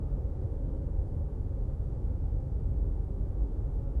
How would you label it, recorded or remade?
remade